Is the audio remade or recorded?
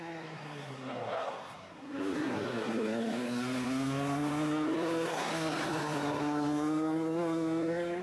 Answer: remade